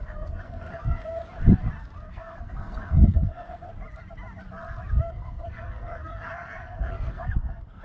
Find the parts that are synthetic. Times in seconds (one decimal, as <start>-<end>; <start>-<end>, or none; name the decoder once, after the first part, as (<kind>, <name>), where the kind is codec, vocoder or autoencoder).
0.0-1.2 (codec, SNAC); 2.1-3.7; 5.0-7.8